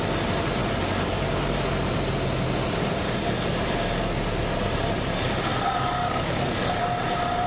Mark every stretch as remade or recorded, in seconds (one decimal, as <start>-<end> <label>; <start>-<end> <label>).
0.0-0.6 recorded; 0.6-1.7 remade; 1.7-5.5 recorded; 5.5-6.8 remade; 6.8-7.5 recorded